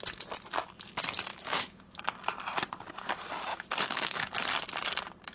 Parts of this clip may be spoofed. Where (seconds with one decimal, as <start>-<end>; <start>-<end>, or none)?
1.3-2.0; 3.5-4.3